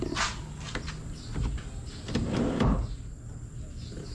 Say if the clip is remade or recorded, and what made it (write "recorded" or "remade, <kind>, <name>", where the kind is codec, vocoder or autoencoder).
recorded